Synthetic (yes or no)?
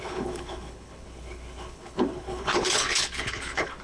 yes